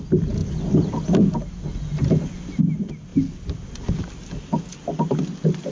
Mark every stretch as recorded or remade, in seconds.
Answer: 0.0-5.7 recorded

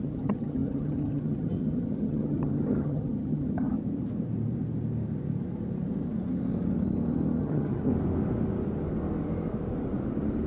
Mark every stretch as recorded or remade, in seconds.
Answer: 0.0-3.8 remade; 3.8-7.4 recorded; 7.4-7.9 remade; 7.9-10.5 recorded